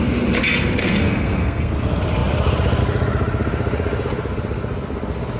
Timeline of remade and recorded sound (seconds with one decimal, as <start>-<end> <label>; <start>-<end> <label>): 0.0-0.8 recorded; 0.8-1.7 remade; 1.7-5.4 recorded